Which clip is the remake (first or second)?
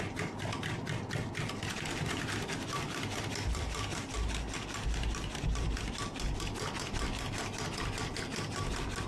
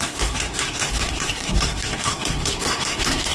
second